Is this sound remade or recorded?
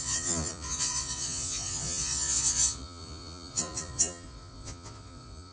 remade